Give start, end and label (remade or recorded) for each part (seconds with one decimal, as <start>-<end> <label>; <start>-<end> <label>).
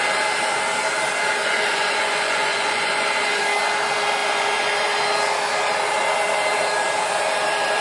0.0-1.4 recorded; 1.4-3.4 remade; 3.4-4.2 recorded; 4.2-4.7 remade; 4.7-7.8 recorded